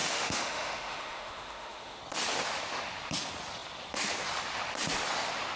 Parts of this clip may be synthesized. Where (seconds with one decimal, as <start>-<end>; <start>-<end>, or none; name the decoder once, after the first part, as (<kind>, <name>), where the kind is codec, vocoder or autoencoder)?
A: 0.0-2.0 (autoencoder, DAC-VAE)